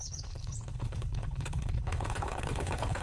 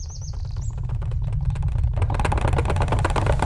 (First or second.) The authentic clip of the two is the second